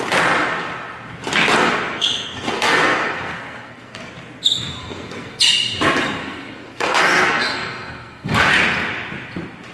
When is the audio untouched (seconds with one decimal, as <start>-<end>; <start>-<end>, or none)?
0.0-1.6; 4.1-4.8; 5.4-6.2; 8.5-9.7